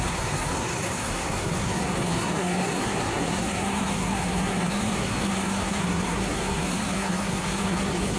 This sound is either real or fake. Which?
fake